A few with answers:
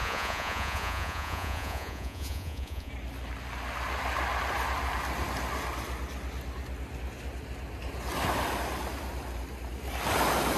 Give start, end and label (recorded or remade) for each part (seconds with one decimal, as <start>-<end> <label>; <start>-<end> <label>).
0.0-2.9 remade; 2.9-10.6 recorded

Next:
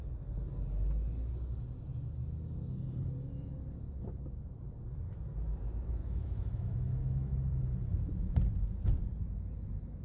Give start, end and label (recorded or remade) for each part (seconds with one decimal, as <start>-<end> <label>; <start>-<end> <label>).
0.0-6.0 recorded; 6.0-7.6 remade; 7.6-10.0 recorded

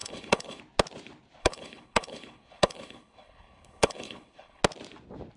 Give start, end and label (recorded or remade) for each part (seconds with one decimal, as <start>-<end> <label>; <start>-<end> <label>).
0.0-0.6 remade; 0.6-1.4 recorded; 1.4-4.6 remade; 4.6-5.4 recorded

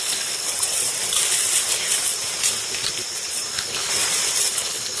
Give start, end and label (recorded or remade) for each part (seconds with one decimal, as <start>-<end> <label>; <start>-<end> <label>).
0.0-0.5 remade; 0.5-3.5 recorded; 3.5-3.9 remade; 3.9-4.5 recorded; 4.5-5.0 remade